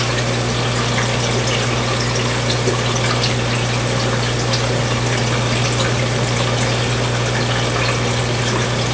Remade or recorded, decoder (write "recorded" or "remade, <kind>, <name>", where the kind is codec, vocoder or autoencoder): recorded